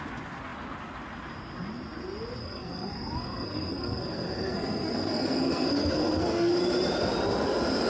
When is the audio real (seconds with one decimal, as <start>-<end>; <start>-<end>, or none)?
0.0-2.4; 6.6-7.9